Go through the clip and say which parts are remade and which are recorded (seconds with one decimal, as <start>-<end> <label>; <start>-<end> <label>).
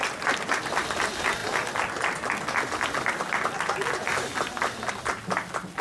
0.0-5.8 recorded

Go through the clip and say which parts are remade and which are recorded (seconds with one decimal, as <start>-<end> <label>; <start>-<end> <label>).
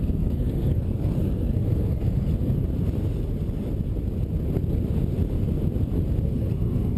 0.0-2.3 remade; 2.3-6.2 recorded; 6.2-7.0 remade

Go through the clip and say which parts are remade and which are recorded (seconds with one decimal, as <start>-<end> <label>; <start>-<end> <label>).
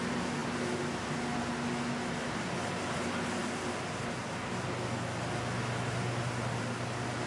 0.0-7.3 recorded